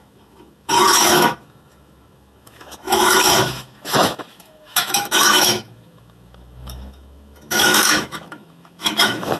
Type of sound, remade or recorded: remade